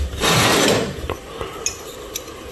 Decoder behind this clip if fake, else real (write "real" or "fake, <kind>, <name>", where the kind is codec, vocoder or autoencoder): real